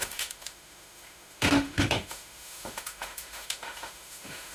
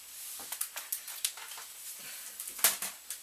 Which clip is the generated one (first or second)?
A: first